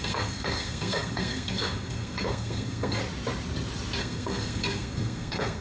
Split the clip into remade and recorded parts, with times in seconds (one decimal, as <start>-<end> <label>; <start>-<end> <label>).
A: 0.0-3.0 remade; 3.0-4.0 recorded; 4.0-5.6 remade